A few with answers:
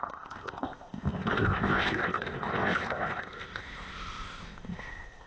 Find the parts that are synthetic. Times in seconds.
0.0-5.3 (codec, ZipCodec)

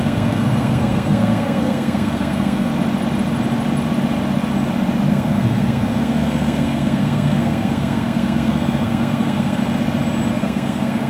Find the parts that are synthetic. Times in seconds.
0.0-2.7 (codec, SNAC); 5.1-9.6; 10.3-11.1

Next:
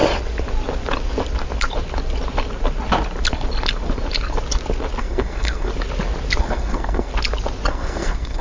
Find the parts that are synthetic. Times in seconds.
5.0-5.7 (codec, SNAC); 6.4-7.1; 7.7-8.4

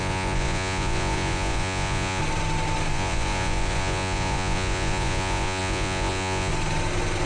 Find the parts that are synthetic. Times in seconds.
0.0-2.2 (vocoder, Vocos); 2.9-6.5